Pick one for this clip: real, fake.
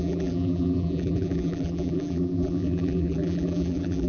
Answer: fake